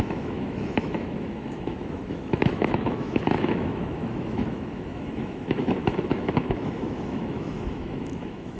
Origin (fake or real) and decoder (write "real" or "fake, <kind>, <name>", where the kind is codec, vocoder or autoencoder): fake, autoencoder, DAC-VAE